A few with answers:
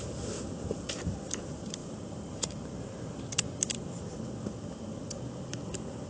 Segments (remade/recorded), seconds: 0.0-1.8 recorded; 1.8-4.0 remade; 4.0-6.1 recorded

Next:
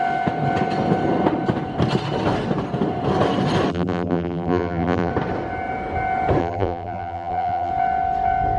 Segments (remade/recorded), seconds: 0.0-3.7 recorded; 3.7-5.1 remade; 5.1-6.4 recorded; 6.4-7.7 remade; 7.7-8.6 recorded